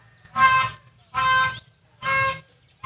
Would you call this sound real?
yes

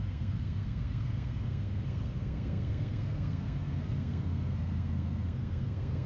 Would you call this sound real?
no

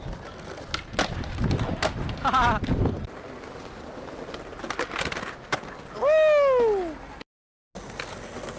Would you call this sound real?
yes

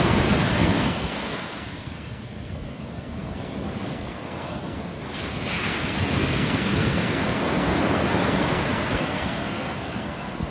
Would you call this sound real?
no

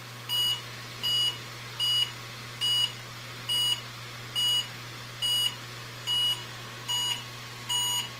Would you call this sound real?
yes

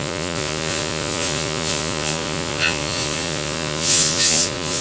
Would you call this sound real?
no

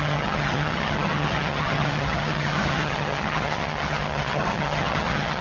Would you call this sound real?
no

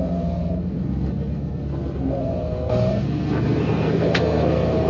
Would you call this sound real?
no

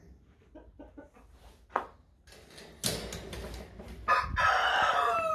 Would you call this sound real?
yes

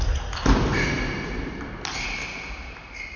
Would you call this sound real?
yes